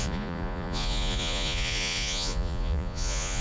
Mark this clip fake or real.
fake